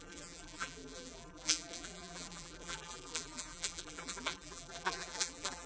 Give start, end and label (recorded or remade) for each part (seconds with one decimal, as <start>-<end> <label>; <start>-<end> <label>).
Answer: 0.0-5.7 remade